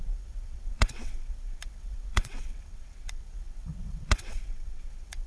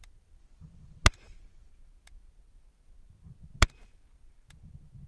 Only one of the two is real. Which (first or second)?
second